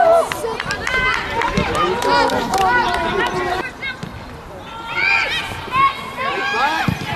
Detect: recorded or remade recorded